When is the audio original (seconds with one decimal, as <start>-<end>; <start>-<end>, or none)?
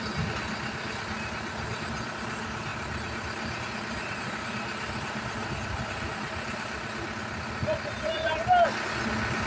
0.0-9.5